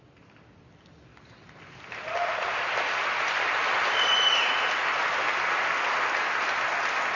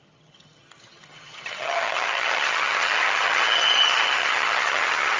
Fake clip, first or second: second